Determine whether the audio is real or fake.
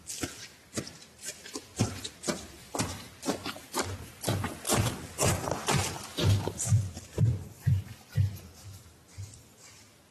real